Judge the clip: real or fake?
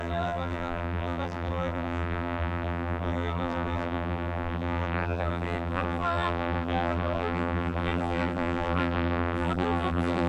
fake